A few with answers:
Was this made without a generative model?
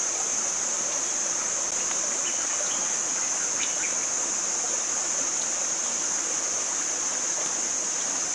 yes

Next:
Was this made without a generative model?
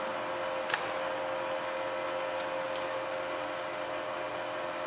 yes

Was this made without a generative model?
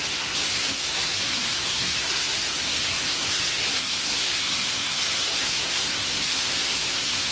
no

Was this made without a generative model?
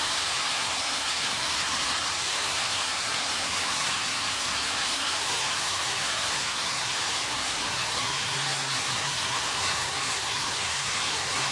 no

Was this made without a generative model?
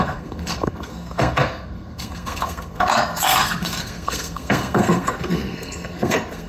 no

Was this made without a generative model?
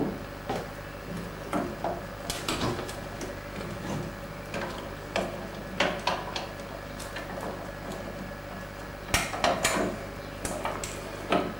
yes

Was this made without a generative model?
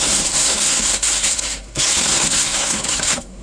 no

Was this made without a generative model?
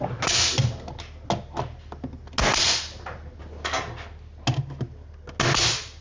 yes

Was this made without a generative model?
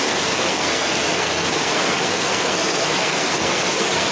no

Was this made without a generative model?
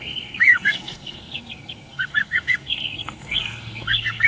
no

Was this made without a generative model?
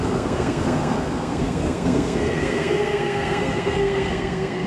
no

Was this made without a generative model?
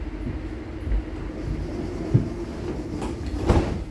yes